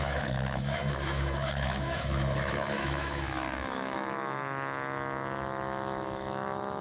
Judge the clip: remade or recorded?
remade